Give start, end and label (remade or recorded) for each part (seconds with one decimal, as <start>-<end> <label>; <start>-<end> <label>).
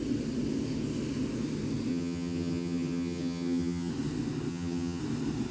0.0-1.9 recorded; 1.9-3.9 remade; 3.9-4.5 recorded; 4.5-5.0 remade; 5.0-5.5 recorded